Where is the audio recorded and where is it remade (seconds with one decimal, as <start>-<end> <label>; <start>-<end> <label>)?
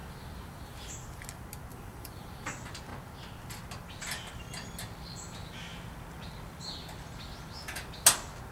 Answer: 0.0-1.2 remade; 1.2-1.7 recorded; 1.7-2.5 remade; 2.5-8.5 recorded